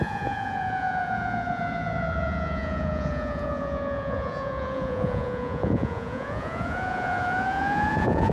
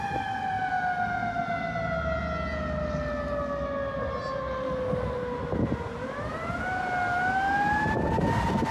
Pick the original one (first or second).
second